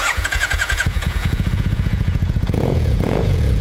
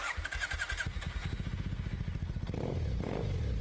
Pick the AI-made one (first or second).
first